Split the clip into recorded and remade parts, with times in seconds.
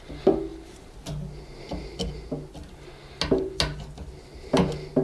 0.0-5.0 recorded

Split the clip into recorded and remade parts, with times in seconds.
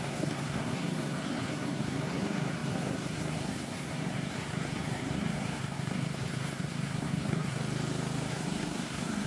0.0-7.6 remade; 7.6-8.3 recorded; 8.3-9.3 remade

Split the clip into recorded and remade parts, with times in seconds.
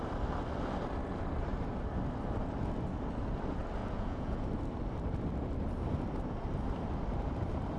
0.0-3.8 recorded; 3.8-4.5 remade; 4.5-7.8 recorded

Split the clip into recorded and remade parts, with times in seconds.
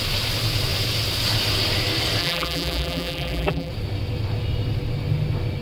0.0-2.2 recorded; 2.2-3.7 remade; 3.7-5.6 recorded